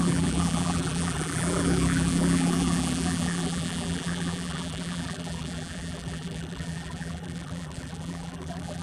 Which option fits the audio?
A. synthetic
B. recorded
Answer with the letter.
A